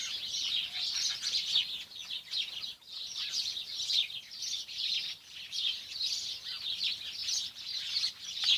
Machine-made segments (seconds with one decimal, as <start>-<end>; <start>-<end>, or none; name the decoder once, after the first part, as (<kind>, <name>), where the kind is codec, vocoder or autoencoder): 0.0-7.2 (vocoder, BigVGAN v2)